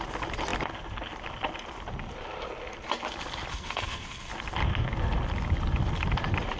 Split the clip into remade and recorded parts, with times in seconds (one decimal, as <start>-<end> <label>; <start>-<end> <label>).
0.0-3.5 recorded; 3.5-4.3 remade; 4.3-6.6 recorded